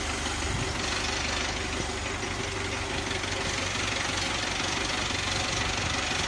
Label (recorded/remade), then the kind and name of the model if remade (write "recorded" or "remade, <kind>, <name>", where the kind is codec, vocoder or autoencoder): recorded